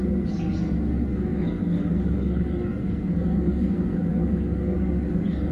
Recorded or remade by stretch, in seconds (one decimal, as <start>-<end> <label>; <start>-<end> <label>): 0.0-5.5 remade